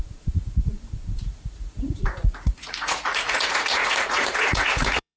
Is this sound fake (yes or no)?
yes